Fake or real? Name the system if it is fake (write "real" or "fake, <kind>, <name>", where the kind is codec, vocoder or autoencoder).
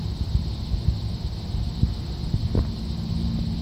real